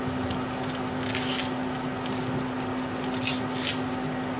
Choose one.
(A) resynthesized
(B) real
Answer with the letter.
B